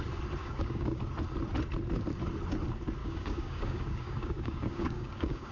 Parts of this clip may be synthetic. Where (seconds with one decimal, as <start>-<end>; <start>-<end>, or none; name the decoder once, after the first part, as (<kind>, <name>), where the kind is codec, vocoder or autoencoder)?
0.4-1.0 (codec, DAC); 3.0-5.5

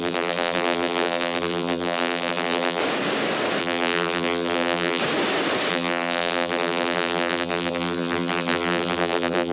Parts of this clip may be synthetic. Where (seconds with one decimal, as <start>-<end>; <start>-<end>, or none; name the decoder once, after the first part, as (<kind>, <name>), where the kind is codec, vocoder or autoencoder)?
0.0-2.8 (vocoder, BigVGAN v2); 3.6-5.0; 5.7-9.5

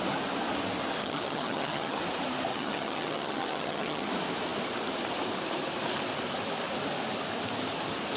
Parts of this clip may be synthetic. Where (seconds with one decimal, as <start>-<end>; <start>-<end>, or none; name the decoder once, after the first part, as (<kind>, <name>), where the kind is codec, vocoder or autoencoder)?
1.0-2.0 (vocoder, HiFi-GAN); 2.5-4.1

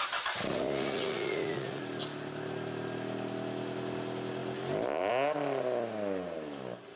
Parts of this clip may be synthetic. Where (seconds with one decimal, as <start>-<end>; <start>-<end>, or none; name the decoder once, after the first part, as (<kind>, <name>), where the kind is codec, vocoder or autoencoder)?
0.5-1.8 (vocoder, Vocos)

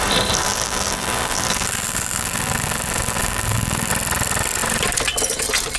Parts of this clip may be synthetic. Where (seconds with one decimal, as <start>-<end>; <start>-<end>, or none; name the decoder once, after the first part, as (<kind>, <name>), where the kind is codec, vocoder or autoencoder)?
0.4-3.9 (vocoder, BigVGAN v2)

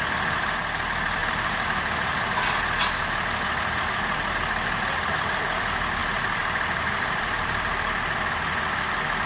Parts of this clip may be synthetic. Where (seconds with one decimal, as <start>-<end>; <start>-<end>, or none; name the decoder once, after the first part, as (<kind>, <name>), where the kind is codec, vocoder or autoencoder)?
1.2-2.2 (vocoder, BigVGAN v2); 6.0-7.7

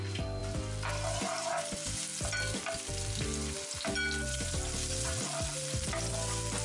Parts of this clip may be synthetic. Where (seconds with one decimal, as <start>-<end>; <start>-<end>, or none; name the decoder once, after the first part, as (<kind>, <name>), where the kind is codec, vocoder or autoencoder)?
none

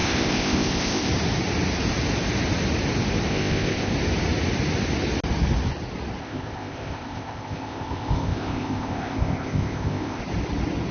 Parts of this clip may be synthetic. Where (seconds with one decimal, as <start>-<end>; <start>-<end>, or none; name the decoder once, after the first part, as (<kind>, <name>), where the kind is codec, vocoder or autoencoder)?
0.0-1.1 (codec, ZipCodec); 3.3-3.9; 6.2-10.2